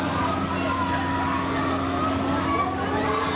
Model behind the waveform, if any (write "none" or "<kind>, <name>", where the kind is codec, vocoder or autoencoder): none